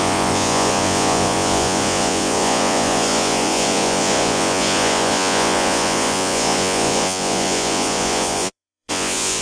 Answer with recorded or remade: remade